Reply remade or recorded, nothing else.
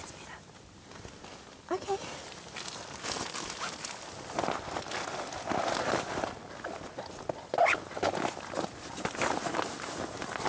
recorded